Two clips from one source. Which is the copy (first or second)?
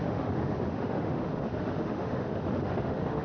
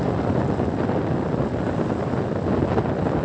first